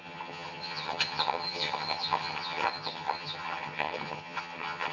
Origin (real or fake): fake